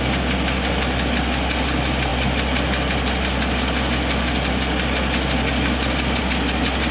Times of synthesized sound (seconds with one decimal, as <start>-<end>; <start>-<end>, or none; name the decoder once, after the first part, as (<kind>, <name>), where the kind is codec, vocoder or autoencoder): none